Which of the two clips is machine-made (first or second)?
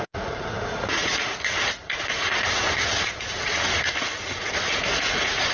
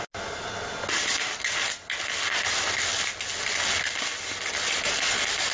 first